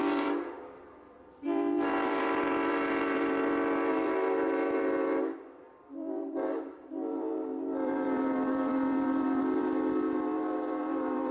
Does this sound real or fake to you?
fake